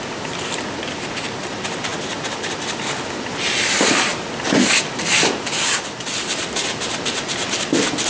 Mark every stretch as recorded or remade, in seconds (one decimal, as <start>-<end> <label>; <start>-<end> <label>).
0.0-8.1 recorded